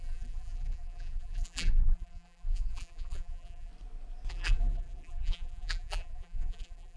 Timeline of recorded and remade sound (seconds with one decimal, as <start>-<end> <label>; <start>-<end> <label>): 0.0-3.7 remade; 3.7-4.3 recorded; 4.3-7.0 remade